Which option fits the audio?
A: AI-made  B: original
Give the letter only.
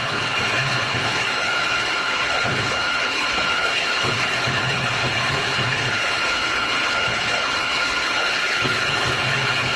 A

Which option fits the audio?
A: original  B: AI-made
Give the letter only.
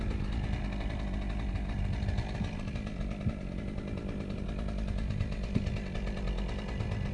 A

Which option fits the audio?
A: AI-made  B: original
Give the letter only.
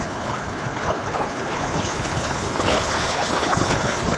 A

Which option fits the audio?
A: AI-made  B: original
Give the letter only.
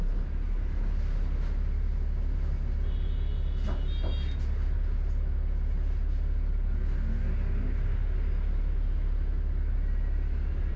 B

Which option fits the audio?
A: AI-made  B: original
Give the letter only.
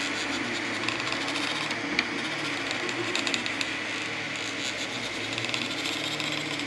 B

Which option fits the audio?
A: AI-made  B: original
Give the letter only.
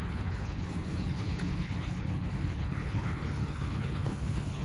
A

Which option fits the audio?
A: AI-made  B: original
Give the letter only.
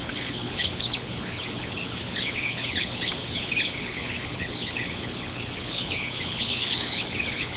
A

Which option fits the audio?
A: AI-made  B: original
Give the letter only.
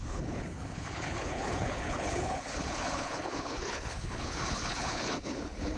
A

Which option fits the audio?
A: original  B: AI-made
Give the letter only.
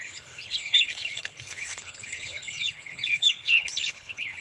B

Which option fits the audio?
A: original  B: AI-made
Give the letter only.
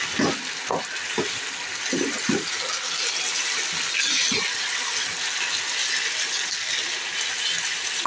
A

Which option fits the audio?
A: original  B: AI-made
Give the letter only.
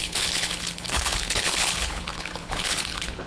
B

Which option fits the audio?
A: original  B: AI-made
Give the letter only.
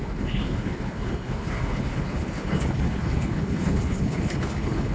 B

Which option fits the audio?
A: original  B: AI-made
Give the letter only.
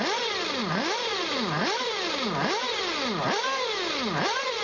A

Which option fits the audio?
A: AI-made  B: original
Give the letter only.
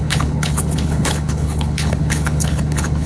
A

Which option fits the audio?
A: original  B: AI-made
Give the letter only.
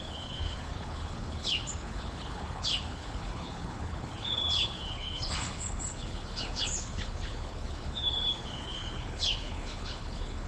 B